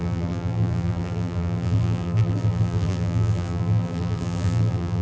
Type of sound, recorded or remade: remade